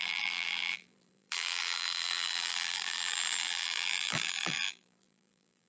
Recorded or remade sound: remade